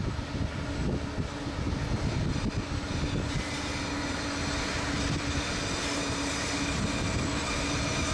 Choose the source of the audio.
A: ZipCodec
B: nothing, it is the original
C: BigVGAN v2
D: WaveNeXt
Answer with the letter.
B